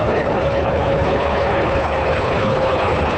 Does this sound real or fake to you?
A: fake